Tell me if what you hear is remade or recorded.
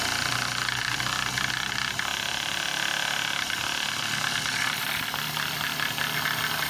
recorded